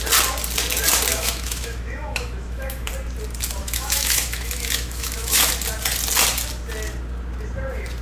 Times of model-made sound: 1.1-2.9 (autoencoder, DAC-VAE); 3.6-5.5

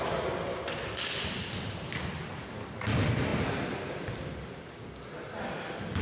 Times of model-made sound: none

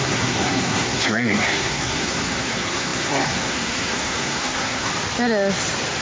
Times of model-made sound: 0.0-4.9 (codec, SNAC)

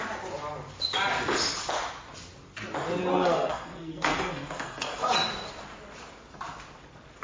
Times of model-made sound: 3.1-5.1 (codec, SNAC)

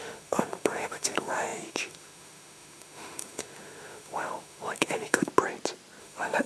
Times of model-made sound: 0.0-5.3 (autoencoder, DAC-VAE); 6.0-6.5

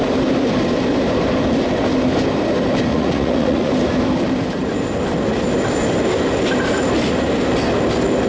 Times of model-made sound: 2.9-3.7 (vocoder, Vocos)

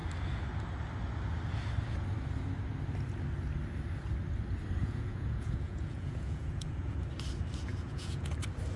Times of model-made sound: 4.8-7.1 (vocoder, Vocos); 7.7-8.3

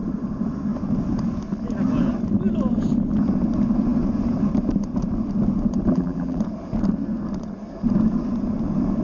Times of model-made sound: 5.9-6.4 (vocoder, BigVGAN v2)